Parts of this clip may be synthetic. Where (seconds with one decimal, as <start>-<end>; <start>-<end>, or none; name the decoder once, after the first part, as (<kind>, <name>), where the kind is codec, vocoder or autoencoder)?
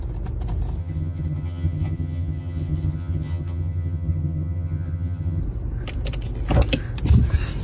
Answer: 0.8-5.4 (vocoder, HiFi-GAN)